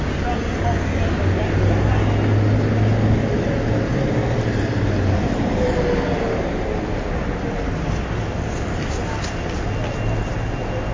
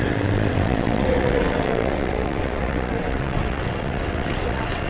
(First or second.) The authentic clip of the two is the first